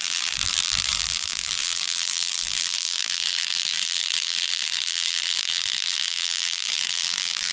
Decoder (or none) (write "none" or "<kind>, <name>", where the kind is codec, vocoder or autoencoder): vocoder, BigVGAN v2